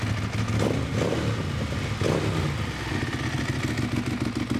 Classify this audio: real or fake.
real